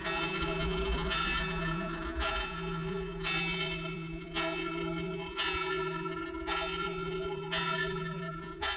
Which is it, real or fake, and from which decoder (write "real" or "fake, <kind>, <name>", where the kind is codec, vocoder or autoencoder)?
fake, vocoder, Vocos